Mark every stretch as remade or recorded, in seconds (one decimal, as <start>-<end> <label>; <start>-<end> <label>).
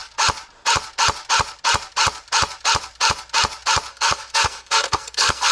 0.0-3.9 recorded; 3.9-5.5 remade